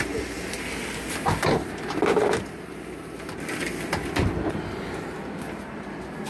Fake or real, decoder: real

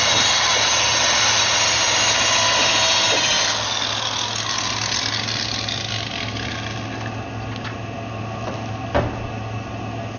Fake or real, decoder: real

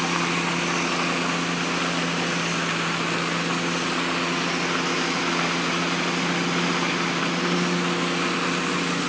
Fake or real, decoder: real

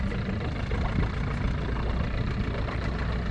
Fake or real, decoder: real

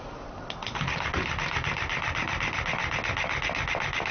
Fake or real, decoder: real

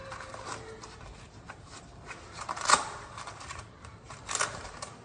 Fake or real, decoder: fake, vocoder, BigVGAN v2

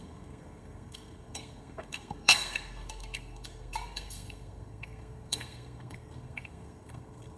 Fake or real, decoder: fake, codec, SNAC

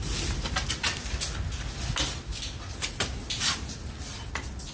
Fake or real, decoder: real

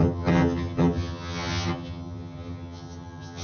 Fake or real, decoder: fake, vocoder, HiFi-GAN